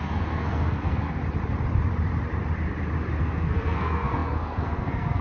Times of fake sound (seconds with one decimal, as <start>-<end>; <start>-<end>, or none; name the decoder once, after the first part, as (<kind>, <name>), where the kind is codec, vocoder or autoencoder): 0.0-1.2 (codec, SNAC); 3.2-5.2